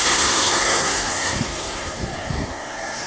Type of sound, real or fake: fake